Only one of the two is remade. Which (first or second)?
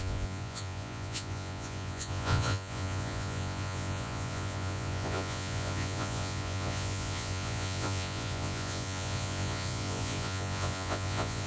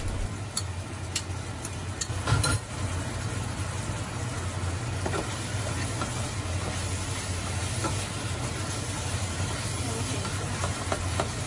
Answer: first